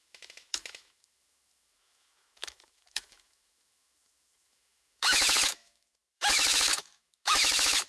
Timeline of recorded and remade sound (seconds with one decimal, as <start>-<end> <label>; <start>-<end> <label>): 0.0-7.9 remade